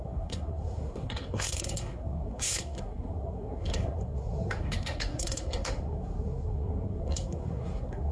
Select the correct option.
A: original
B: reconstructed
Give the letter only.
B